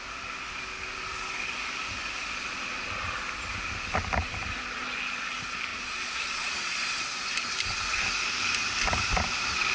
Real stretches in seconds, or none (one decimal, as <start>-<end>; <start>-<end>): 0.0-5.7; 7.0-9.7